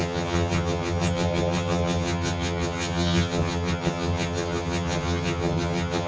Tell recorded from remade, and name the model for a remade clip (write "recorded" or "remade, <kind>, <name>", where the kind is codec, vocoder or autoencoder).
remade, vocoder, HiFi-GAN